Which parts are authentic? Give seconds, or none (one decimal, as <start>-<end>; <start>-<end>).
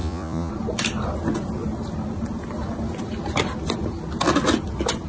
0.5-5.1